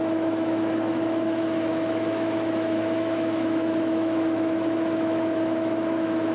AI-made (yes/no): yes